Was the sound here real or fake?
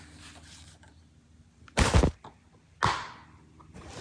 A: real